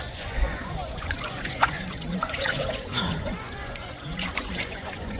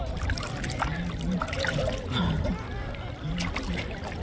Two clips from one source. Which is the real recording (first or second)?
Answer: second